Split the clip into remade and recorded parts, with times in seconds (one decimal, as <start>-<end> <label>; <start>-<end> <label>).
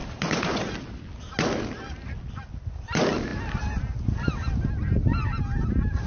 0.0-6.1 recorded